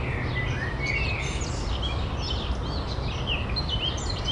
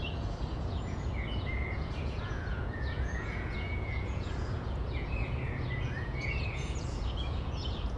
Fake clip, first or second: second